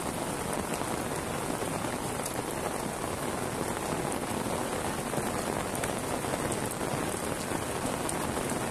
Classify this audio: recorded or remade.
recorded